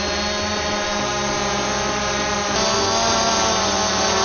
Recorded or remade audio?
recorded